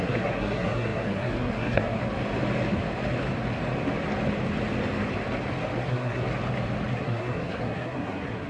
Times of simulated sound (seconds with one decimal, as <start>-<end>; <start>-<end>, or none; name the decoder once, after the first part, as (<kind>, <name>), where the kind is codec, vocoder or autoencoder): 0.0-2.0 (codec, SNAC); 5.8-6.2; 6.9-8.5